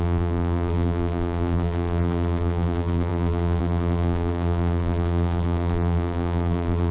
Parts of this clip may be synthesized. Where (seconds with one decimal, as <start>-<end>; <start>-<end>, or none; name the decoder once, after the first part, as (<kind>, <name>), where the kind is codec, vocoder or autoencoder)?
0.0-6.9 (vocoder, BigVGAN v2)